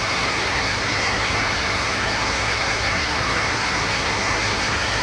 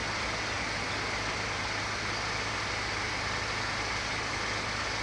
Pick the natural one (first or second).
second